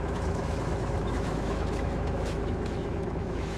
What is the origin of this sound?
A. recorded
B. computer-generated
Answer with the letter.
B